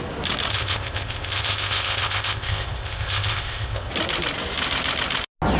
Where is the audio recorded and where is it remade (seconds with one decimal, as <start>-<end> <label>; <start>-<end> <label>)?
0.0-0.5 recorded; 0.5-3.9 remade; 3.9-5.6 recorded